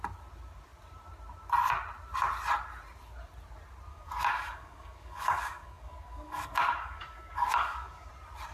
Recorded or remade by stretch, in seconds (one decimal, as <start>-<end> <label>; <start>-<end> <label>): 0.0-3.9 recorded; 3.9-8.1 remade; 8.1-8.5 recorded